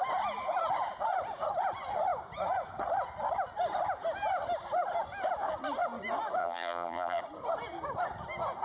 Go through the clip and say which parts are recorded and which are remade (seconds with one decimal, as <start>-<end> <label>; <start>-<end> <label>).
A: 0.0-6.4 recorded; 6.4-7.2 remade; 7.2-8.6 recorded